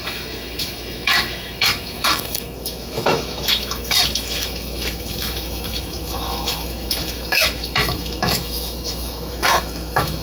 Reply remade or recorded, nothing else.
remade